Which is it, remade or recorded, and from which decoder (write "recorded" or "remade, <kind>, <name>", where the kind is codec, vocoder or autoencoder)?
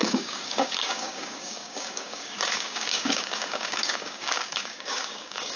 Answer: remade, codec, DAC